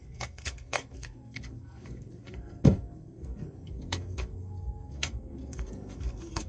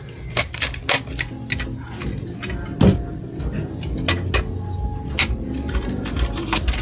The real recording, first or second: second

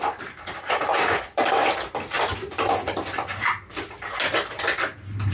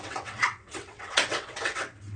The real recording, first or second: first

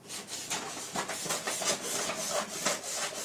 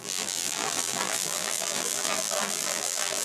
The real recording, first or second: first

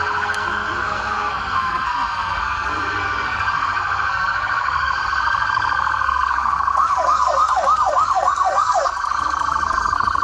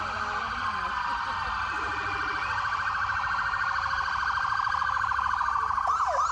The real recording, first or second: second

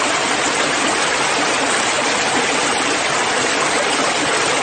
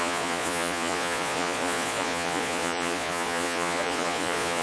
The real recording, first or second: first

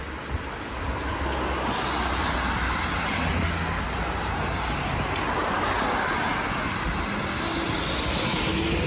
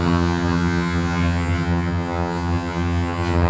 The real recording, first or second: first